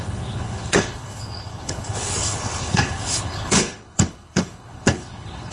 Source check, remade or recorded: remade